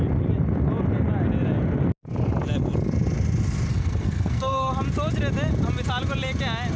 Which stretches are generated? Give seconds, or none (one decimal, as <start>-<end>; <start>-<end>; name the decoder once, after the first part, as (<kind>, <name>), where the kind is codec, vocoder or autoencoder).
3.7-4.7 (codec, SNAC)